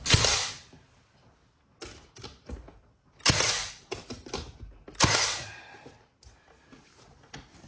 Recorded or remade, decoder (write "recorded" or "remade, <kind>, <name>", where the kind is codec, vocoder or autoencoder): recorded